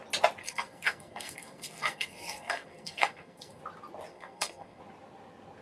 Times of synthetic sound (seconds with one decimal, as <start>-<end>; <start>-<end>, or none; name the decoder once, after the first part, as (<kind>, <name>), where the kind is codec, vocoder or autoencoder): 0.4-3.6 (codec, SNAC); 4.1-4.8